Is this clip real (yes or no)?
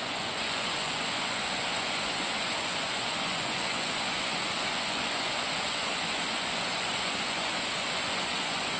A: no